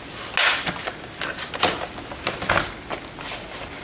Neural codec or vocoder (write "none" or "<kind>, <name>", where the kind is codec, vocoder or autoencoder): none